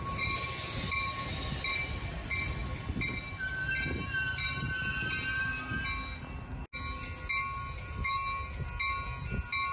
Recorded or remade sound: recorded